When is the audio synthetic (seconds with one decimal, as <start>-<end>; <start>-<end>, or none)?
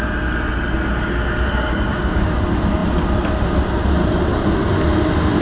1.9-2.4